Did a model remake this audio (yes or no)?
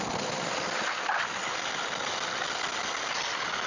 no